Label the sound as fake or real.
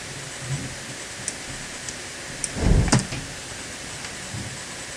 real